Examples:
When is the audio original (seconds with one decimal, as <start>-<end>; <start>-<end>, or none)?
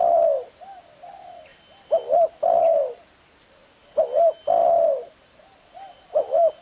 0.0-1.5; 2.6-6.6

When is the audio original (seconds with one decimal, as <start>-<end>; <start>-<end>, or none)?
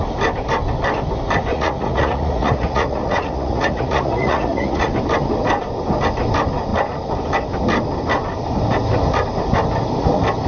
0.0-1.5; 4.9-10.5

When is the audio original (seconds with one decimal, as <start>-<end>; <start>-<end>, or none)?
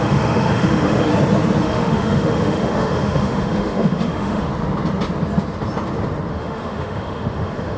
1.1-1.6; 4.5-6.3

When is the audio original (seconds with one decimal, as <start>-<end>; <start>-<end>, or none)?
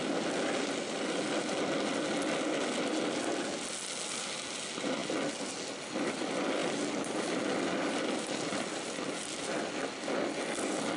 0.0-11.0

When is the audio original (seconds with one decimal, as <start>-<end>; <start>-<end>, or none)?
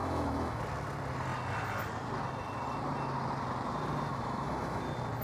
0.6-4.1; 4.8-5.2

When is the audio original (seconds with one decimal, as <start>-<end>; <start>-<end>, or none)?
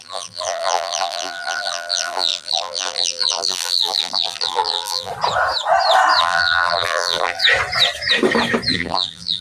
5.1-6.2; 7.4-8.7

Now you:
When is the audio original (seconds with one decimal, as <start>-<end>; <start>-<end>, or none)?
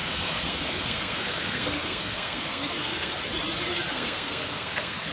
3.1-3.9